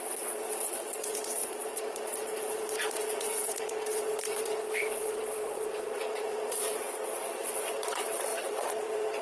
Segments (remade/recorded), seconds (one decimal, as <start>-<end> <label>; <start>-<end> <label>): 0.0-9.2 remade